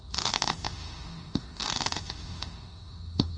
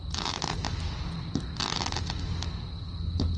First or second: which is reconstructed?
first